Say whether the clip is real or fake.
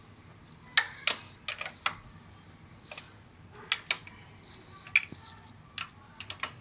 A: real